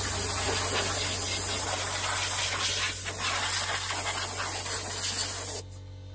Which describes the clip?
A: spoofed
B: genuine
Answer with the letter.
B